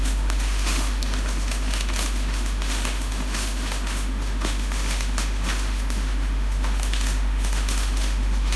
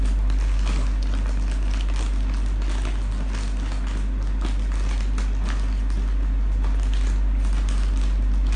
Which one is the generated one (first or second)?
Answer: first